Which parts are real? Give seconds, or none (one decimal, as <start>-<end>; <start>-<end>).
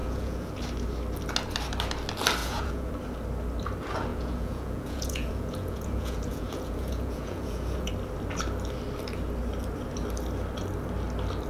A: 0.6-2.4; 2.9-4.1; 7.9-11.5